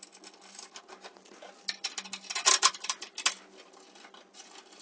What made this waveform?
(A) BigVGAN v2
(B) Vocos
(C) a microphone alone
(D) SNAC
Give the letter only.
C